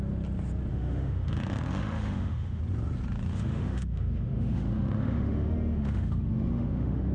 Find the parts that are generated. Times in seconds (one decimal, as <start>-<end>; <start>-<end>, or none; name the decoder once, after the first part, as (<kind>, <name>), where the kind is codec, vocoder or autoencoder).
0.7-2.6 (autoencoder, DAC-VAE); 3.3-7.1